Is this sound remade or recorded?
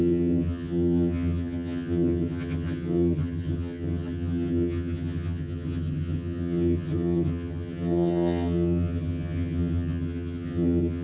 remade